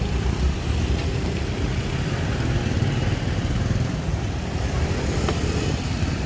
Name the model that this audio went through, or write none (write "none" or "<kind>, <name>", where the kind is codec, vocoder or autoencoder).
vocoder, BigVGAN v2